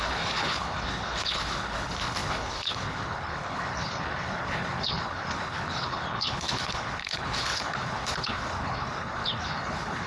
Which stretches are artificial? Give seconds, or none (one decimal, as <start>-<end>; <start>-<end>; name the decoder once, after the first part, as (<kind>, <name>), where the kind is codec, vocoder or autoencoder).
0.0-10.1 (codec, HILCodec)